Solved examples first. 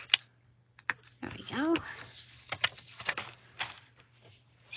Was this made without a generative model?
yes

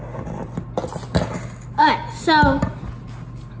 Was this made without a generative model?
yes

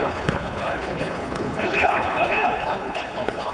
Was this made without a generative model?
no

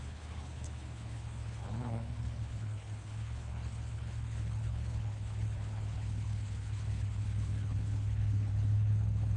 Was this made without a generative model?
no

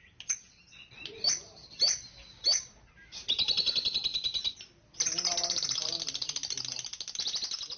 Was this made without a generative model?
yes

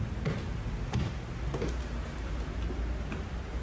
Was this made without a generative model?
yes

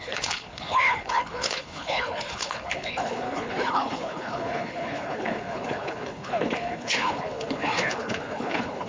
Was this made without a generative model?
no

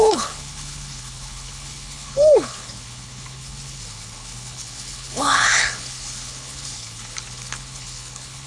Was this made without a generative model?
no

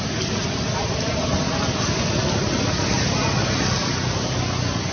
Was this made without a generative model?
yes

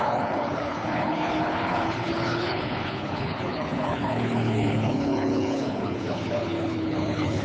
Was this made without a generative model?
no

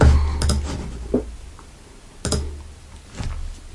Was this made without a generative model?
yes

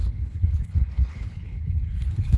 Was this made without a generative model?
no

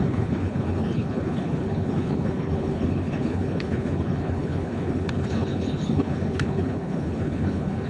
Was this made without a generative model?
no